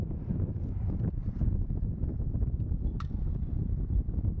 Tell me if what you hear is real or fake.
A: real